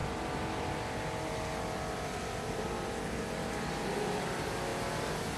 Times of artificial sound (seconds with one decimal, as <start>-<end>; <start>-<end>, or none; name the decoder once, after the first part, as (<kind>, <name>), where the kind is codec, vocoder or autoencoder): none